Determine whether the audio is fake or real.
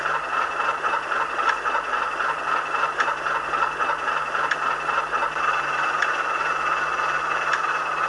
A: real